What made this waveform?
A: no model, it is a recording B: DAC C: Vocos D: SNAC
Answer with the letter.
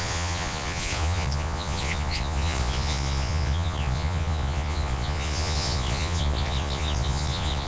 C